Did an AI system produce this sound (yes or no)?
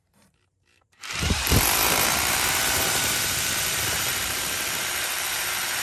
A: yes